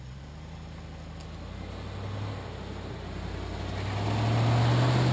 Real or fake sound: real